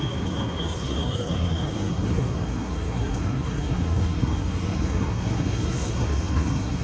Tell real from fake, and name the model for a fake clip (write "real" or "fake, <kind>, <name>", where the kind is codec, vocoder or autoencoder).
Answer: fake, codec, SNAC